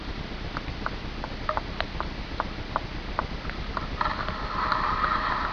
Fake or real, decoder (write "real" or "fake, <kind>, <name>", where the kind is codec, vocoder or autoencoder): real